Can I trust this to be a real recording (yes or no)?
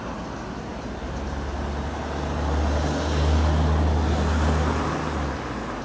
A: yes